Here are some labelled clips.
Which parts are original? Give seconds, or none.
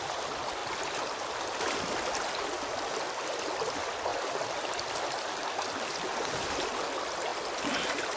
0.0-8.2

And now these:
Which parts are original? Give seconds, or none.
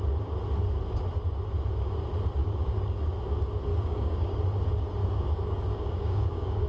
0.0-2.4; 3.1-3.7; 4.4-5.0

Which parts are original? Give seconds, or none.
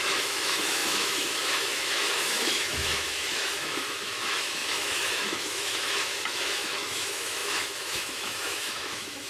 none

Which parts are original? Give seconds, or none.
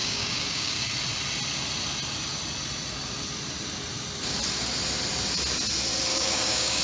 0.9-6.1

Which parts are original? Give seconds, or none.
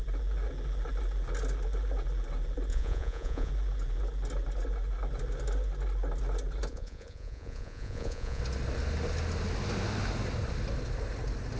0.0-2.7; 3.5-6.7; 8.4-11.6